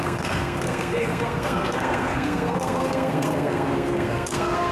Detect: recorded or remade remade